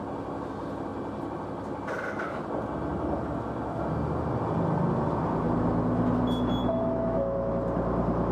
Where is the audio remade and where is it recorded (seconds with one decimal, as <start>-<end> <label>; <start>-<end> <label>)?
0.0-6.6 recorded; 6.6-7.5 remade; 7.5-8.3 recorded